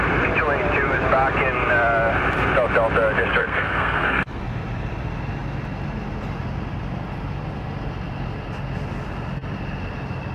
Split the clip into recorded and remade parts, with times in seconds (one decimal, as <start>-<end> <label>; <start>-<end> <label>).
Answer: 0.0-3.4 recorded; 3.4-4.4 remade; 4.4-10.3 recorded